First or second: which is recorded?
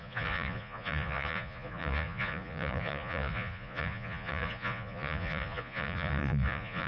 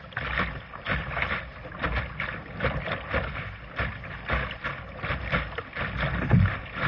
second